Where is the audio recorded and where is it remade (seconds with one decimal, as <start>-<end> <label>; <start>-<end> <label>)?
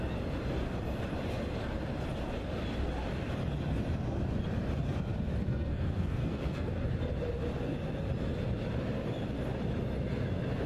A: 0.0-5.4 recorded; 5.4-6.7 remade; 6.7-10.7 recorded